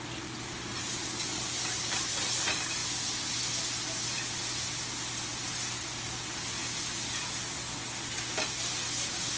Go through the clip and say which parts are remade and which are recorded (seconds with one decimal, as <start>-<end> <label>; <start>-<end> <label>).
0.0-9.4 recorded